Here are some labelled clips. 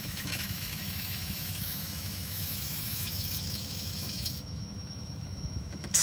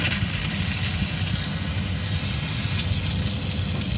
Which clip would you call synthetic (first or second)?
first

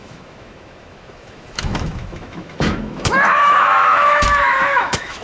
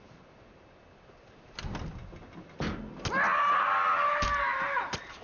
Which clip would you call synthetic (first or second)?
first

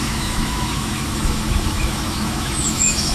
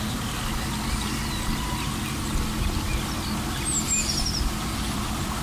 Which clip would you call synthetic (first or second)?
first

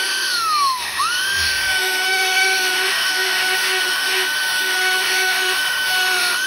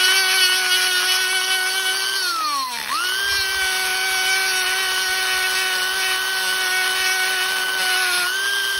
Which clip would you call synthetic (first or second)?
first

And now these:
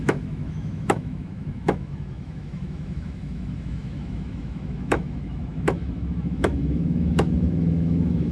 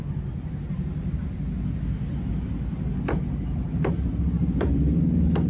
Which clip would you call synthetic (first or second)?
first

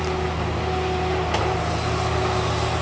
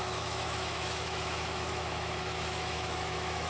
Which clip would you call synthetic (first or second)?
second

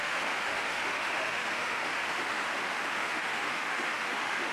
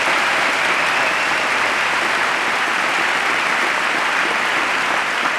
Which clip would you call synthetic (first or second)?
first